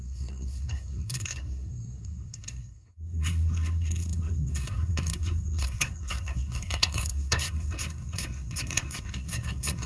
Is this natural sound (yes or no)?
no